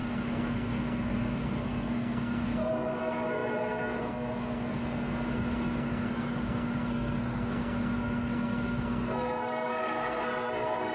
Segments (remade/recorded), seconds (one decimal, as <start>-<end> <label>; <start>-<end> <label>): 0.0-4.8 remade; 4.8-5.3 recorded; 5.3-10.9 remade